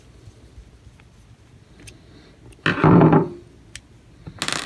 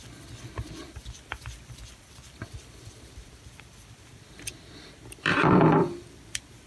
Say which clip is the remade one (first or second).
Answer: second